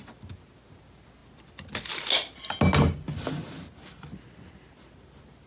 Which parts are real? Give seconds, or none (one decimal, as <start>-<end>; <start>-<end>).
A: 0.0-5.5